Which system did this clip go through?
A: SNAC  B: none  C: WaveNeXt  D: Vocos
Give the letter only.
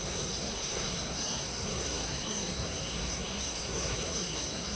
A